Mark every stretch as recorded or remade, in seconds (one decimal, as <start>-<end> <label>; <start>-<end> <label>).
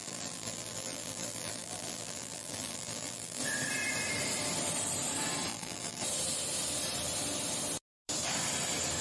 0.0-3.4 remade; 3.4-5.5 recorded; 5.5-6.0 remade; 6.0-9.0 recorded